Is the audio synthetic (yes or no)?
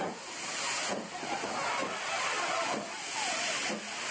no